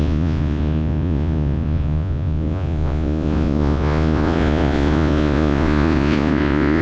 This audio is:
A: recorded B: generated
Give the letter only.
B